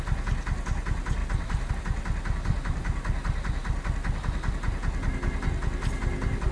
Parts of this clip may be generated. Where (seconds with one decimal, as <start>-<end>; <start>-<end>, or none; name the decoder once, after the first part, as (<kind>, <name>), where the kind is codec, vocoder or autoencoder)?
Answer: 1.2-1.7 (vocoder, BigVGAN v2)